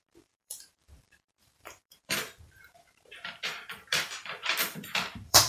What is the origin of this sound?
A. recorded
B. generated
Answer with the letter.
B